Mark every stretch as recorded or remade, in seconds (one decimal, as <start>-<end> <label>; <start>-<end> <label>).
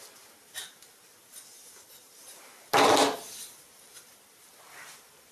0.0-5.3 recorded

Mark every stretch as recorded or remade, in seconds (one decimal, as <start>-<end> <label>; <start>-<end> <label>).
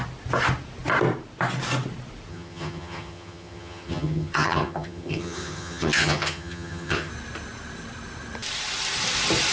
0.0-2.3 recorded; 2.3-7.1 remade; 7.1-9.5 recorded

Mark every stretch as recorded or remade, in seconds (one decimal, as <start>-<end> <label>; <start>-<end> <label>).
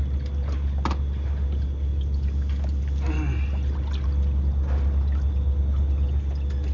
0.0-6.7 recorded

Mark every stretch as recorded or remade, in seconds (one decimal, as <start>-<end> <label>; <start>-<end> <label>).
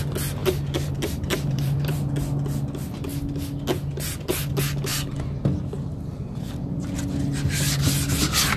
0.0-0.4 recorded; 0.4-2.1 remade; 2.1-8.6 recorded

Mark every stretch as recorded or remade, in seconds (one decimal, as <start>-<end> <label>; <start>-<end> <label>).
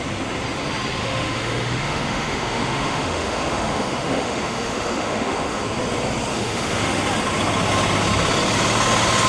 0.0-1.0 recorded; 1.0-5.6 remade; 5.6-6.3 recorded; 6.3-7.0 remade; 7.0-9.3 recorded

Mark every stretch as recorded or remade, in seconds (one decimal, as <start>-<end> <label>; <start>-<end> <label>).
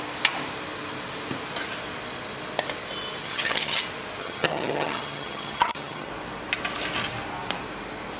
0.0-3.2 recorded; 3.2-3.8 remade; 3.8-4.2 recorded; 4.2-6.1 remade; 6.1-8.2 recorded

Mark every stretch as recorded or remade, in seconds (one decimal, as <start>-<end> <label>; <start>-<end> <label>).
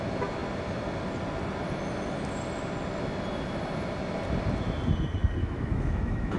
0.0-5.4 recorded; 5.4-6.4 remade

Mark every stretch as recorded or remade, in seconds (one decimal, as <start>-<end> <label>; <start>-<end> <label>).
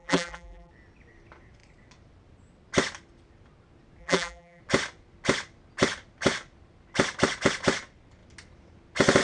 0.0-0.7 remade; 0.7-4.0 recorded; 4.0-4.6 remade; 4.6-9.2 recorded